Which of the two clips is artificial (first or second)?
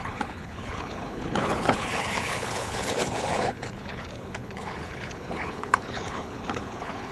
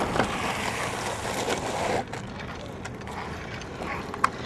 first